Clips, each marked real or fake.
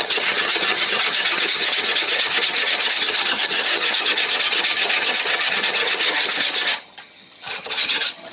fake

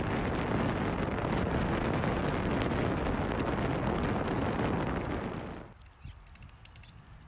real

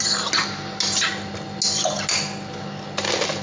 real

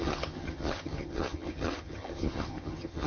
fake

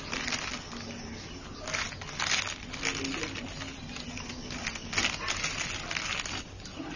real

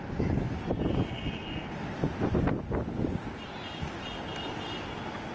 real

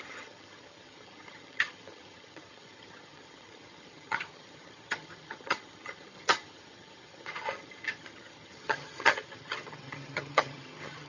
fake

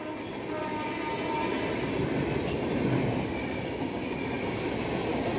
real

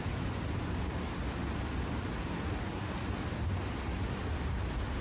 real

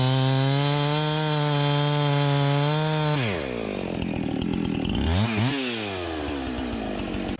real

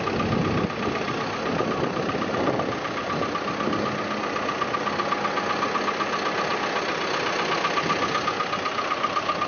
real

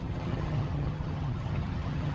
fake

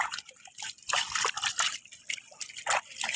real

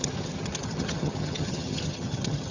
fake